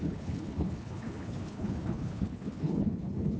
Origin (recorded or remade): remade